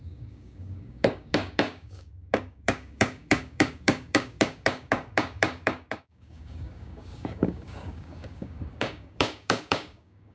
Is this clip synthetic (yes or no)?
yes